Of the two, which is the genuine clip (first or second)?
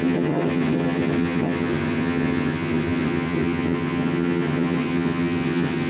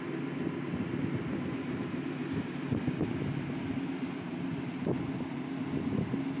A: second